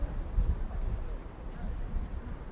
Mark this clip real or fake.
real